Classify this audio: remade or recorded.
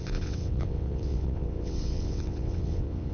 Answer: remade